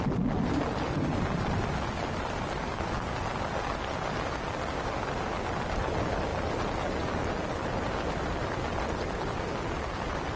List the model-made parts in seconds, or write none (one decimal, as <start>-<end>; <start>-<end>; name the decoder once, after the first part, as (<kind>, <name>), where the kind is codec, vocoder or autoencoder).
none